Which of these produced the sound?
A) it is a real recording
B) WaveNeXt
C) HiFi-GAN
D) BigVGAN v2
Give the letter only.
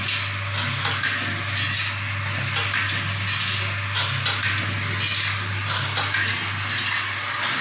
A